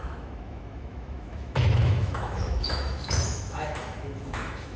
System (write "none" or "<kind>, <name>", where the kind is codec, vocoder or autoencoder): autoencoder, DAC-VAE